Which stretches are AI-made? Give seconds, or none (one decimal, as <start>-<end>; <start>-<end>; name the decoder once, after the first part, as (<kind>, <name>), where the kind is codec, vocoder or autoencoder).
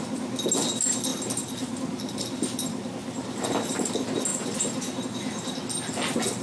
1.1-2.2 (vocoder, BigVGAN v2); 3.0-3.9; 4.3-5.0